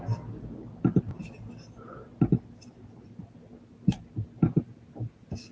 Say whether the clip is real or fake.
real